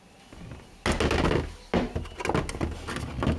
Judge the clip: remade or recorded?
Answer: recorded